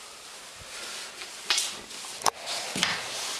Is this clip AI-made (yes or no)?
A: no